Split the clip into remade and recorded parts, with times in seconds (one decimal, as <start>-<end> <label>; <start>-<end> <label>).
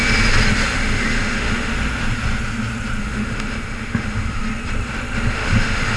0.0-0.7 recorded; 0.7-1.7 remade; 1.7-3.0 recorded; 3.0-4.4 remade; 4.4-5.3 recorded; 5.3-6.0 remade